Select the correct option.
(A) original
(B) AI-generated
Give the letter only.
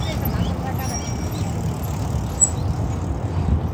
A